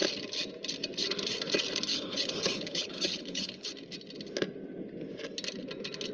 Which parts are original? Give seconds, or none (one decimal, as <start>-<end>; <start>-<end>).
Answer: 0.0-1.9; 3.7-6.1